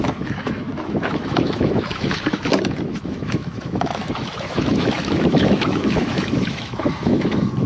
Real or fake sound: fake